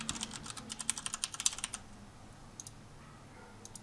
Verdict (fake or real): real